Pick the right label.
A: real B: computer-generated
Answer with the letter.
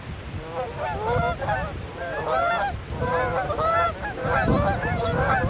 A